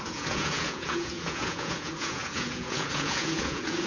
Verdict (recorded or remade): remade